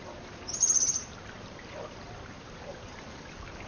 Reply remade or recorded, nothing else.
remade